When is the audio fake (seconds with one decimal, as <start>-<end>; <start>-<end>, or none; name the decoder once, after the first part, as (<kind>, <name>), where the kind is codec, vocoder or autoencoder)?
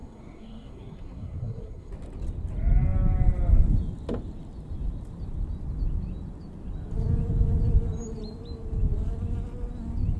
0.0-1.9 (codec, SNAC)